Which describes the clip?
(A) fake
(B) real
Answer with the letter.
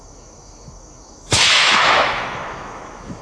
A